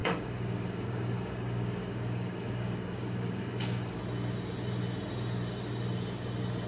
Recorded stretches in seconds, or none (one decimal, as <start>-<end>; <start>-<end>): 4.0-6.7